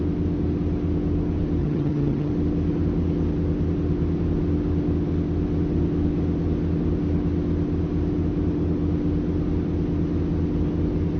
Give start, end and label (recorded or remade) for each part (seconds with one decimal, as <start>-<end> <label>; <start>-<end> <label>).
0.0-1.6 recorded; 1.6-2.3 remade; 2.3-11.2 recorded